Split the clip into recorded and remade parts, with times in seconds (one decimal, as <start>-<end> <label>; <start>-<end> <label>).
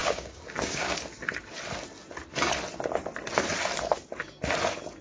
0.0-1.0 remade; 1.0-5.0 recorded